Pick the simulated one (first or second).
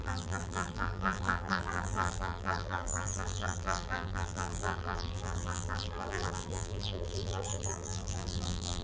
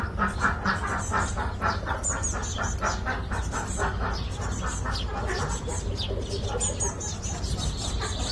first